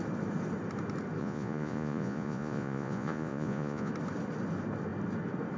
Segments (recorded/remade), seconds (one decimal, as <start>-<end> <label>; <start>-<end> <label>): 0.0-1.2 recorded; 1.2-3.9 remade; 3.9-5.6 recorded